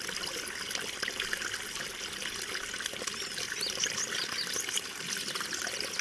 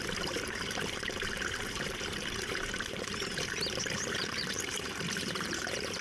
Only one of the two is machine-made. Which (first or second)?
second